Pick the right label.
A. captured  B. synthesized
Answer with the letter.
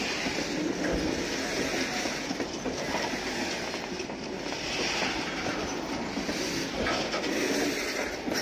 A